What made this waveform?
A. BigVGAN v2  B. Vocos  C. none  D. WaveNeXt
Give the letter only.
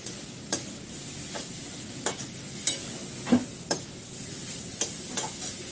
C